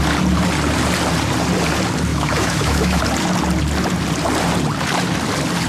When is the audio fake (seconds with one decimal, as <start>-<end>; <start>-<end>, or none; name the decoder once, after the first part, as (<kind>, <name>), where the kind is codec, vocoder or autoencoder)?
2.1-3.0 (autoencoder, DAC-VAE)